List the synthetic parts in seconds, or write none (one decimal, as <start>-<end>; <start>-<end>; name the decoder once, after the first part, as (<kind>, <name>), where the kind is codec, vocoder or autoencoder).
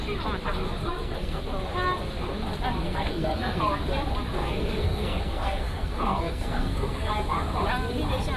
0.8-1.4 (codec, SNAC); 2.8-3.6; 4.4-7.1